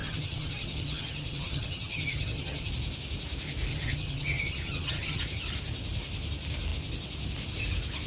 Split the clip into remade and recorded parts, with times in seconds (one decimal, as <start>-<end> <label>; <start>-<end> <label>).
0.0-2.7 remade; 2.7-3.7 recorded; 3.7-5.2 remade; 5.2-8.1 recorded